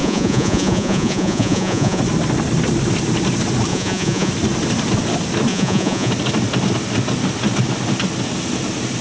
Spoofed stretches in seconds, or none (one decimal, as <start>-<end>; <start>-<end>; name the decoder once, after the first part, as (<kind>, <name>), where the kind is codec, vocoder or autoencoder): 0.0-2.0 (vocoder, Vocos); 3.7-4.3; 5.5-6.1